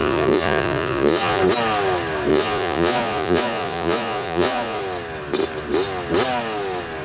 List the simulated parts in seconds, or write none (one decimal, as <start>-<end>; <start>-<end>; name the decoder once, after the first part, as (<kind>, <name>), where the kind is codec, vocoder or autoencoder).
0.0-1.4 (vocoder, Vocos); 2.3-4.8